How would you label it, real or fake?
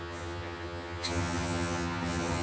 fake